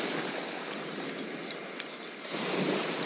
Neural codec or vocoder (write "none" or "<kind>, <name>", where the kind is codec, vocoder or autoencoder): none